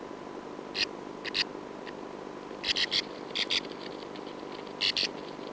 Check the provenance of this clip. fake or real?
real